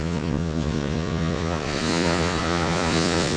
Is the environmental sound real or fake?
fake